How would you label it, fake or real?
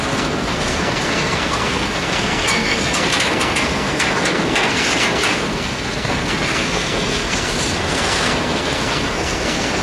fake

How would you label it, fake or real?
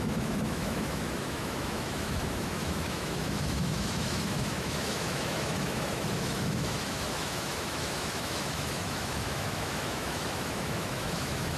fake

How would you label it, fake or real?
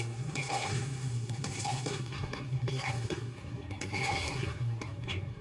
fake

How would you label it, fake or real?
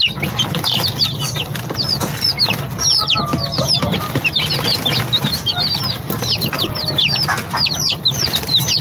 real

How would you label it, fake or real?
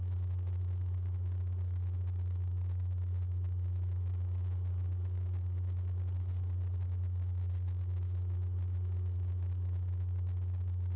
real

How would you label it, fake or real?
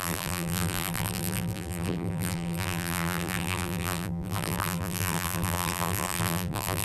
fake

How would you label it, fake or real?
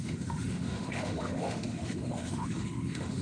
fake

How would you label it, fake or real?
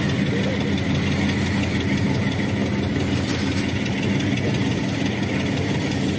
real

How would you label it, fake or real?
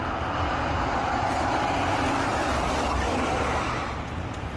real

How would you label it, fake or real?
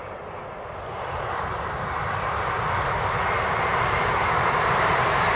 fake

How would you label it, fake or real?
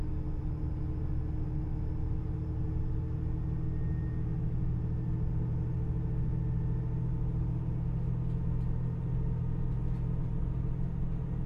real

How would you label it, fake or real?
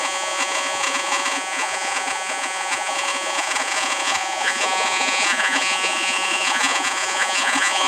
fake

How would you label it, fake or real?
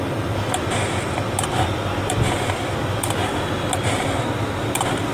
real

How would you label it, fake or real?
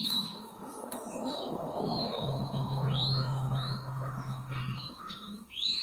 fake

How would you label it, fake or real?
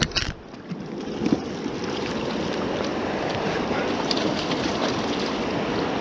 real